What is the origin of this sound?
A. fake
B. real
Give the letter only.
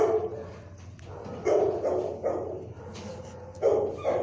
B